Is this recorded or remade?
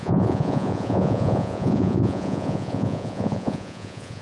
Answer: remade